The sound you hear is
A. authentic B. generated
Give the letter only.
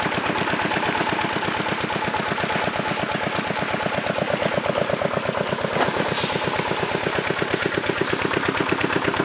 A